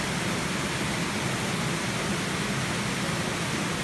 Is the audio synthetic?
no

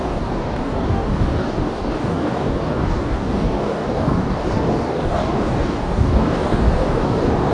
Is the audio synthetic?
yes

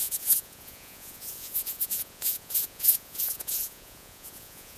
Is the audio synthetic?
yes